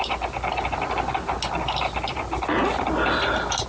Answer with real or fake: real